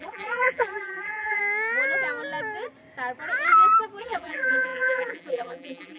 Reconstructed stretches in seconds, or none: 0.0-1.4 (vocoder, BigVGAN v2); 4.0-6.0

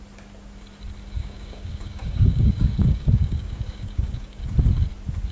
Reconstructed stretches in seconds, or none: 1.2-4.4 (codec, DAC)

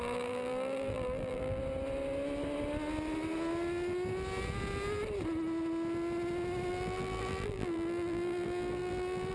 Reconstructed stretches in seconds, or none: 0.0-1.6 (vocoder, BigVGAN v2); 6.7-9.3

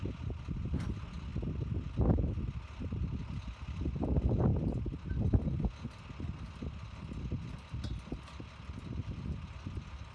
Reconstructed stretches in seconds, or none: none

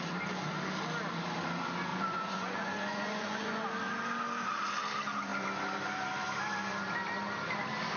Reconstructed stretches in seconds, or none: 1.9-3.6 (vocoder, Vocos)